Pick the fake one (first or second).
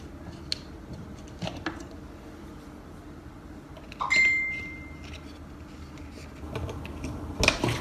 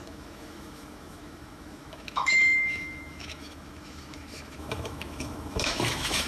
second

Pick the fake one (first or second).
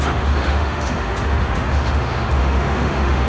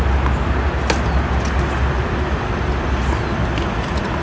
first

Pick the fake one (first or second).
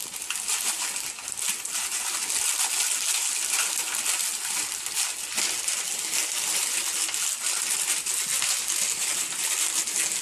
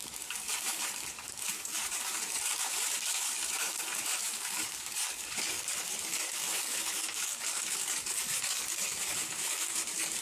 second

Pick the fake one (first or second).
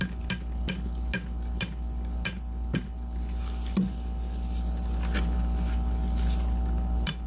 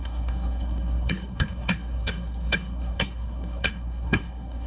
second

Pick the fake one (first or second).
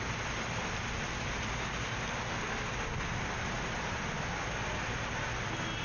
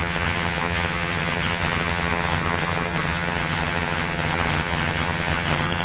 second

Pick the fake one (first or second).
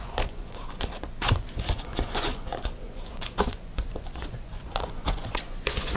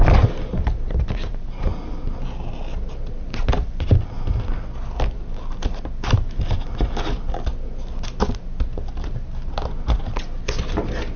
first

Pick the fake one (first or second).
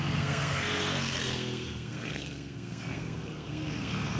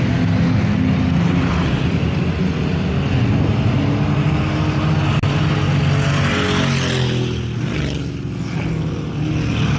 first